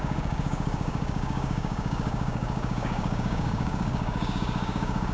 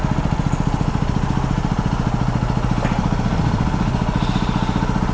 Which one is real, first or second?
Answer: second